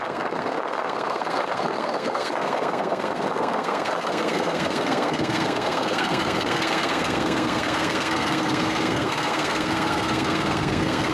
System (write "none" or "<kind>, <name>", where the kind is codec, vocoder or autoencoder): codec, SNAC